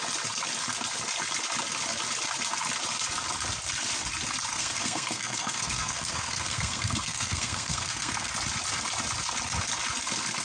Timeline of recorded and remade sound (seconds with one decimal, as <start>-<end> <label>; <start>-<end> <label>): 0.0-4.5 recorded; 4.5-8.3 remade; 8.3-10.4 recorded